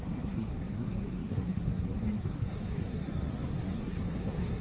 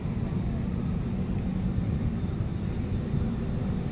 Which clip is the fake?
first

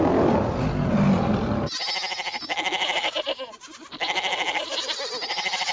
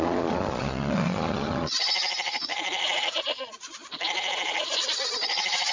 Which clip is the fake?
second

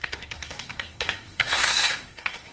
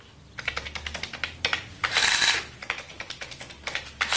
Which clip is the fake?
first